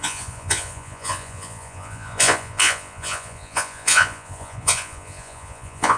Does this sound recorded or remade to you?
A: remade